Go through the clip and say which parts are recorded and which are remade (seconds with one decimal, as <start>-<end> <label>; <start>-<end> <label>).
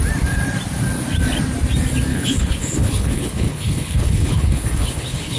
0.0-2.1 recorded; 2.1-5.4 remade